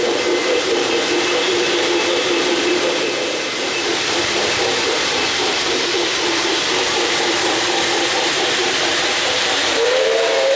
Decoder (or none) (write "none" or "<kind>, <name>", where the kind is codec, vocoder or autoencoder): vocoder, BigVGAN v2